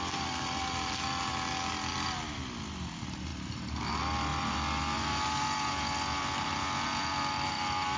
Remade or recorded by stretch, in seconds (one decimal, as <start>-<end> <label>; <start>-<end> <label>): 0.0-8.0 recorded